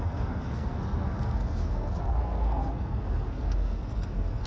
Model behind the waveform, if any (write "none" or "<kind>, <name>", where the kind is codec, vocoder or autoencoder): codec, SNAC